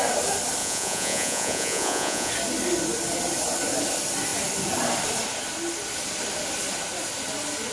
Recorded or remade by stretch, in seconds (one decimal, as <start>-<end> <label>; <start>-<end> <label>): 0.0-0.6 recorded; 0.6-2.3 remade; 2.3-7.7 recorded